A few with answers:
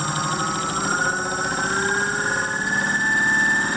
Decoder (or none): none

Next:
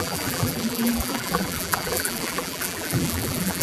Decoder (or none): vocoder, BigVGAN v2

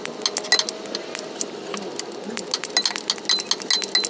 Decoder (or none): none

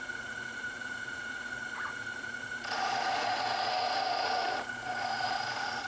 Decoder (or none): vocoder, Vocos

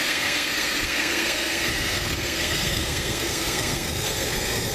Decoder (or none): codec, SNAC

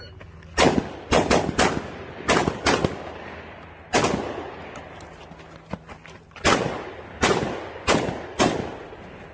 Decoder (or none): none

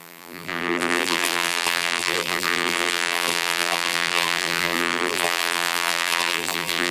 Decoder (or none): vocoder, BigVGAN v2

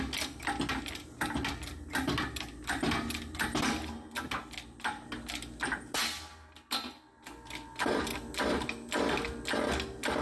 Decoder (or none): none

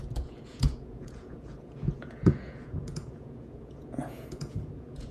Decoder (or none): vocoder, Vocos